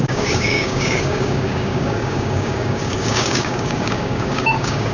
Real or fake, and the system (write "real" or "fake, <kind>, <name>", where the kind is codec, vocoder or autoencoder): fake, codec, DAC